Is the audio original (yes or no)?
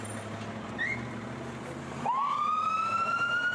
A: no